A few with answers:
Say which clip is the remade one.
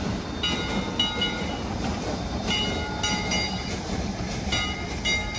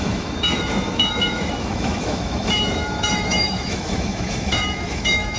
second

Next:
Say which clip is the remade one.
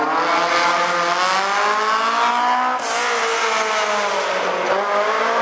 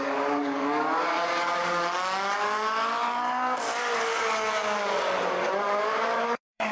second